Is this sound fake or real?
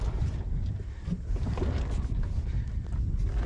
real